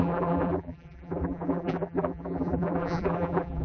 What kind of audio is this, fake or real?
fake